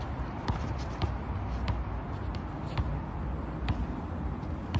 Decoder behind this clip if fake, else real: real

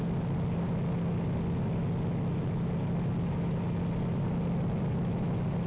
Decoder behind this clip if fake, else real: real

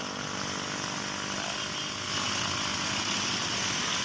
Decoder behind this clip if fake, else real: real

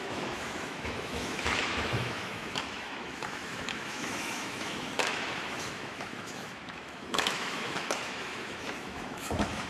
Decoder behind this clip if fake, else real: fake, autoencoder, DAC-VAE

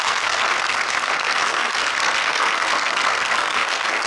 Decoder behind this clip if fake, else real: fake, codec, SNAC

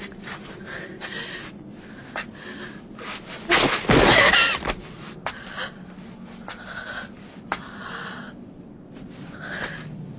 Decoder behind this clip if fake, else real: real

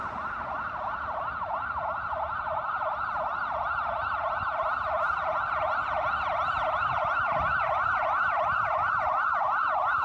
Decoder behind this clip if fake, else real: real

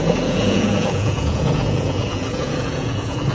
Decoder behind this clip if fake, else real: fake, vocoder, Vocos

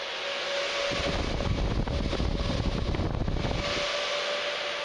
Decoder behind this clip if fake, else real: real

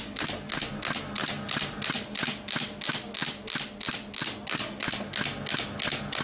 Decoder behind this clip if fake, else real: real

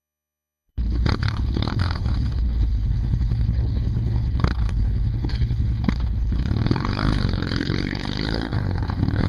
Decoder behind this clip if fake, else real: fake, codec, HILCodec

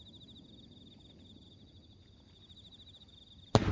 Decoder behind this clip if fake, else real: real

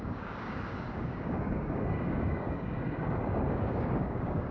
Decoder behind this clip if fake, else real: fake, codec, DAC